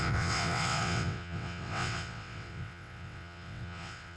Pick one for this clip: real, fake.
fake